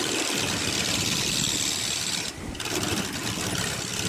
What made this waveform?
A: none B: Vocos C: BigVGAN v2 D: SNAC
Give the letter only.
A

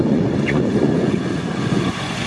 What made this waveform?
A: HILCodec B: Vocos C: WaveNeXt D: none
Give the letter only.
B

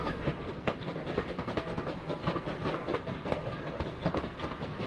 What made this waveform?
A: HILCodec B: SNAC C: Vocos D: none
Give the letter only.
B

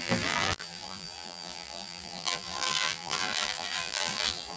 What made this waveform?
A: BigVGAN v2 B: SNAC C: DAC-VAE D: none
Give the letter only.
A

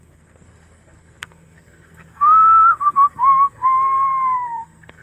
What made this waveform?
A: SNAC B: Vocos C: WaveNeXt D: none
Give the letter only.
A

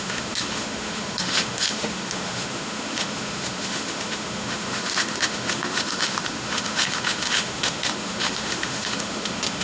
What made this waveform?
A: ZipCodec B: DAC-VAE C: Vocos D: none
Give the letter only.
B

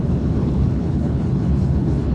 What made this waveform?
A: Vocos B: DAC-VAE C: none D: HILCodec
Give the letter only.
D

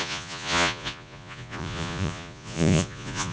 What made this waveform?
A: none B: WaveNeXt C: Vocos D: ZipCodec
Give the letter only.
C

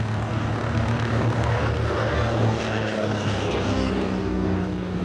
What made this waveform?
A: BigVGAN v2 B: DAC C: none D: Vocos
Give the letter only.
B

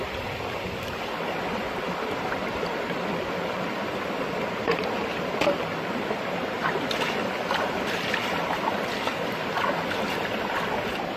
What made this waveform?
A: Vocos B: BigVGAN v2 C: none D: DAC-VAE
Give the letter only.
C